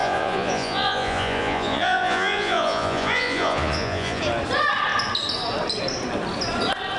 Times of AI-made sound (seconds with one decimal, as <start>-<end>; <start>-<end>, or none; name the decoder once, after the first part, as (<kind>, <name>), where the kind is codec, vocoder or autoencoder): 0.0-4.2 (vocoder, Vocos)